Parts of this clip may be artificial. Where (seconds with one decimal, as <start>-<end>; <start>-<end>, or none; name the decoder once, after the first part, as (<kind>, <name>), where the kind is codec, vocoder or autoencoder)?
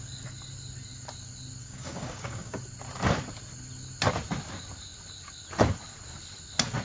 1.6-2.6 (codec, DAC)